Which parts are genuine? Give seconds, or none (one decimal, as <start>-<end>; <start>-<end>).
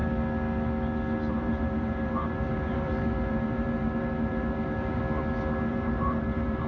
0.0-1.3; 5.0-5.7